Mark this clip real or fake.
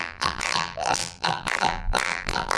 fake